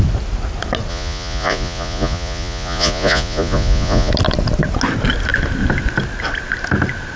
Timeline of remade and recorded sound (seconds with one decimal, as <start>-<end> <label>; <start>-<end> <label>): 0.0-0.9 recorded; 0.9-4.1 remade; 4.1-7.2 recorded